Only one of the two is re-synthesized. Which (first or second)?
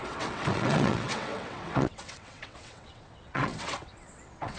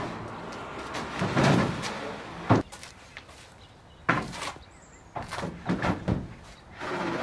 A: first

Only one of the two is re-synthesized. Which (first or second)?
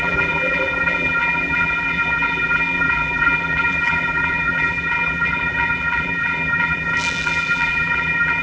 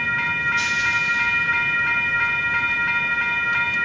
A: first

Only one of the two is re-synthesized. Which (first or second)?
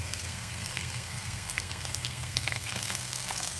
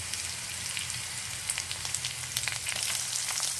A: first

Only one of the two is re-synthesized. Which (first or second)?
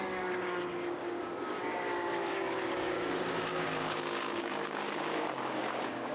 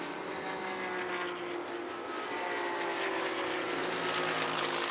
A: first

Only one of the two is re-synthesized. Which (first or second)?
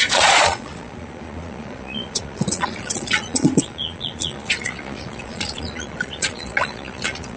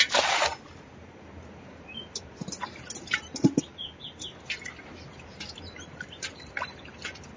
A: first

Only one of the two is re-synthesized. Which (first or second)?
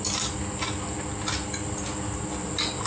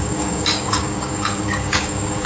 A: second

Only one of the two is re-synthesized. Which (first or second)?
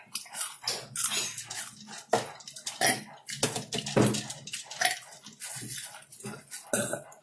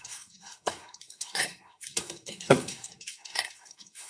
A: second